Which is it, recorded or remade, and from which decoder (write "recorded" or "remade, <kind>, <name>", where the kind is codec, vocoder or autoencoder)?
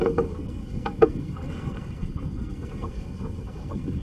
remade, codec, SNAC